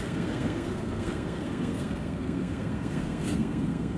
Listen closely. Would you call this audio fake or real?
fake